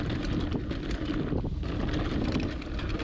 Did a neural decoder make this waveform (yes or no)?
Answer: no